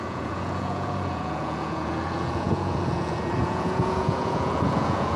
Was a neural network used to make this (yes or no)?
yes